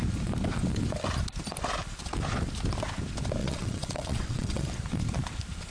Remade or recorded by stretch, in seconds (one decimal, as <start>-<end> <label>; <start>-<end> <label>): 0.0-3.4 recorded; 3.4-4.7 remade; 4.7-5.7 recorded